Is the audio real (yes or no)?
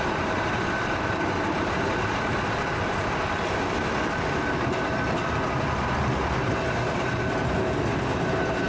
no